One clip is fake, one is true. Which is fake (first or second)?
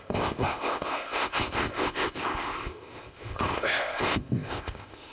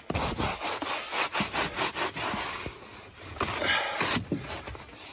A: first